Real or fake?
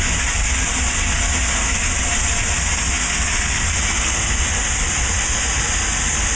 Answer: real